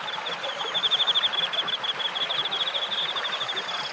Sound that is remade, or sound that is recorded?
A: recorded